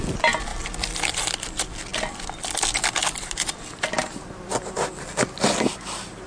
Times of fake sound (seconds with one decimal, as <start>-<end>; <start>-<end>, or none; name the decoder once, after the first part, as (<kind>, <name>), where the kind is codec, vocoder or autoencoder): none